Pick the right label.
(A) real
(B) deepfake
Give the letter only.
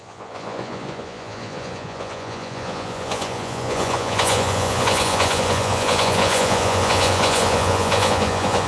B